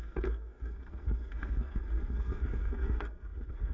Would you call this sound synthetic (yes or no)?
yes